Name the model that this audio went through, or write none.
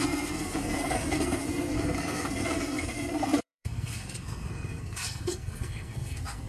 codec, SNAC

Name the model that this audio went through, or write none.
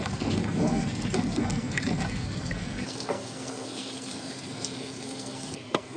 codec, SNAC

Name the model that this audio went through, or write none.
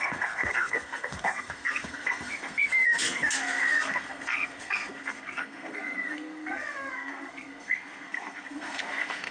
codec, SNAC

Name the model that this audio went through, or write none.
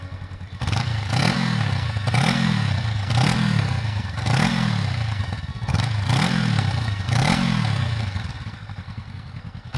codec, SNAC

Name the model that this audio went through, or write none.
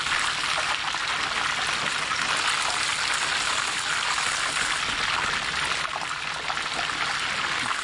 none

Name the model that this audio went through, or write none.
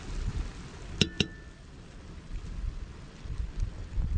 none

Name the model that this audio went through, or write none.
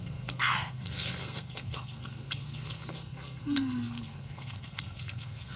codec, SNAC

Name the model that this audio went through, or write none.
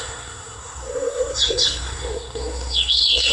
codec, SNAC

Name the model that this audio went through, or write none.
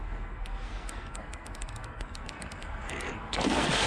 codec, SNAC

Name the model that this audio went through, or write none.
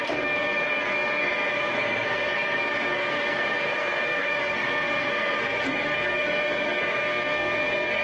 codec, SNAC